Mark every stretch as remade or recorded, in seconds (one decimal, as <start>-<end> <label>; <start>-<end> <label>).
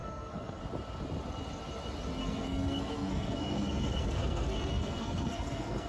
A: 0.0-0.6 remade; 0.6-2.2 recorded; 2.2-5.9 remade